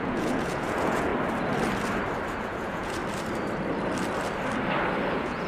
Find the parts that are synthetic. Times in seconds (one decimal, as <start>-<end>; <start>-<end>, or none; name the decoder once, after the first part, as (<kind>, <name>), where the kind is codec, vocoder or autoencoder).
0.0-1.1 (vocoder, Vocos); 2.4-3.0; 5.1-5.5